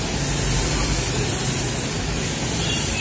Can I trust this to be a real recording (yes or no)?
yes